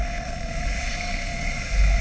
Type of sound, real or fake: fake